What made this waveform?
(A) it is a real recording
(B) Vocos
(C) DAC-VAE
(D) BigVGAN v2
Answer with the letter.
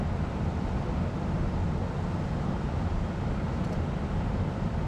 D